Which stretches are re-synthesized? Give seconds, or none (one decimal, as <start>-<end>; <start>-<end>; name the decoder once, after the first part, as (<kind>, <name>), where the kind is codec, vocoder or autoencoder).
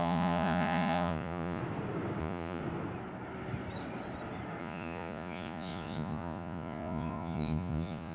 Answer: 0.0-1.6 (vocoder, Vocos); 2.2-2.6; 4.6-8.1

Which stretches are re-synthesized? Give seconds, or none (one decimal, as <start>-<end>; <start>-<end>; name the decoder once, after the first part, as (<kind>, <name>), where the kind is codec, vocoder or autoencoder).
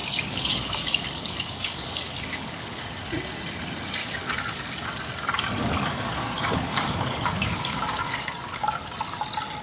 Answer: 0.0-2.8 (codec, DAC); 4.0-4.9; 5.6-8.8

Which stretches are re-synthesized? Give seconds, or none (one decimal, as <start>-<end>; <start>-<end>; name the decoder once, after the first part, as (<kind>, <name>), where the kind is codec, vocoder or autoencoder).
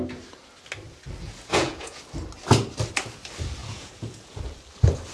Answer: 1.2-2.0 (vocoder, Vocos); 3.6-4.4